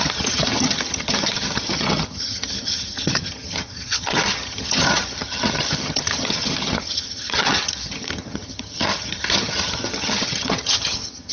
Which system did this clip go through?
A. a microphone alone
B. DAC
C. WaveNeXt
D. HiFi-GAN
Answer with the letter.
D